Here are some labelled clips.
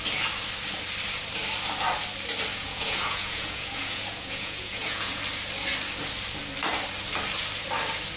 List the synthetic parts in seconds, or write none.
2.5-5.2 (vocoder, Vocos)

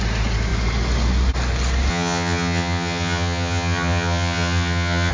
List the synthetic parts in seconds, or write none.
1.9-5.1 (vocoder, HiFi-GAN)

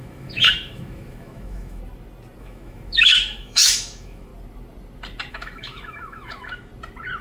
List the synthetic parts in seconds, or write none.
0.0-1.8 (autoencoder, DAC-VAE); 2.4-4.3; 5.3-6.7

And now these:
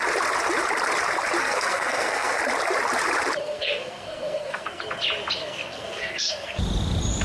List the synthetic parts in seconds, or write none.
1.4-2.4 (codec, SNAC); 3.4-4.8; 5.4-6.6

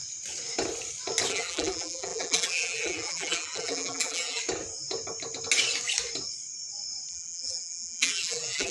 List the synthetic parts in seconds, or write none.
1.3-4.4 (vocoder, BigVGAN v2); 7.1-8.7

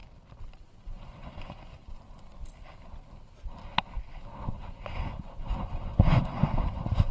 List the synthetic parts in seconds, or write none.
0.6-1.8 (vocoder, Vocos); 4.5-7.1

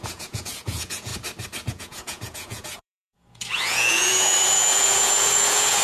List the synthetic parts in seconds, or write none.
0.0-1.1 (vocoder, Vocos); 1.7-5.8